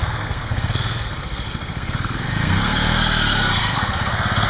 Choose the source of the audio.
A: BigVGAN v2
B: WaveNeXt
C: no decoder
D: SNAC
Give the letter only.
D